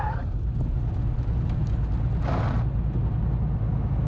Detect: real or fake real